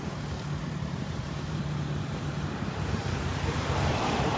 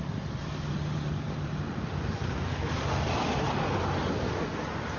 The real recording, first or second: second